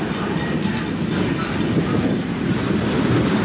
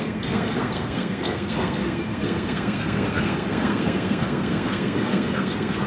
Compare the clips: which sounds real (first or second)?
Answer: first